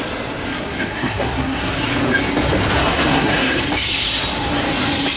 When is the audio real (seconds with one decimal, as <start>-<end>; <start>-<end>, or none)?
0.0-0.5; 1.8-2.8; 3.6-5.2